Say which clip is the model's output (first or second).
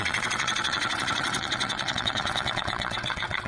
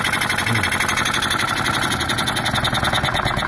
first